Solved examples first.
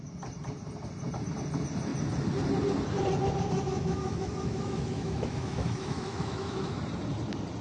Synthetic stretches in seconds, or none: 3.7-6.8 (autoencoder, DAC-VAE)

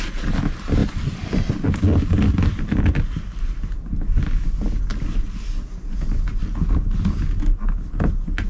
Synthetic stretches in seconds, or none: none

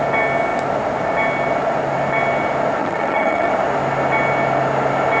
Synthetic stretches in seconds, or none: 2.8-3.5 (vocoder, HiFi-GAN)

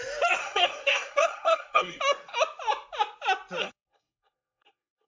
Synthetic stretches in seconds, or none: 0.4-2.0 (codec, SNAC); 3.6-5.1

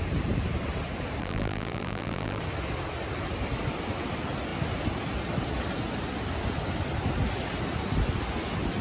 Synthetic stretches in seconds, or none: 1.2-2.4 (vocoder, BigVGAN v2)